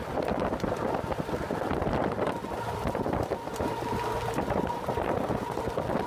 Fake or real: real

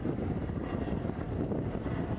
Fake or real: real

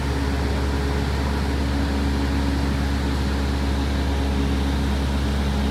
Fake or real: real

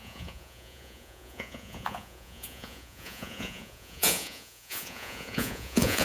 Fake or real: fake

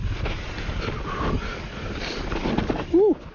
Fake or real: real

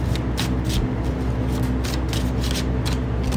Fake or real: real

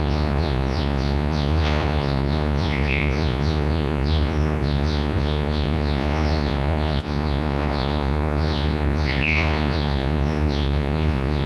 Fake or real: fake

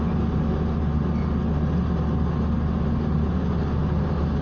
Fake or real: real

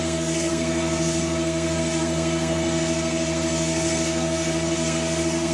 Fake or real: fake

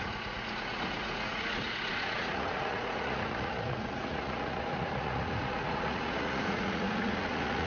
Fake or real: fake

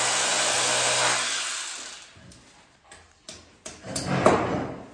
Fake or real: real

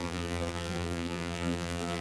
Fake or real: fake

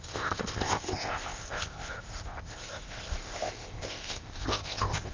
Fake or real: fake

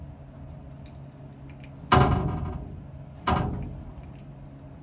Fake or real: real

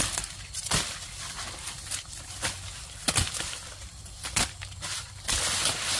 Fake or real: real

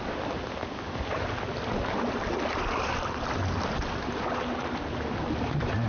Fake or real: real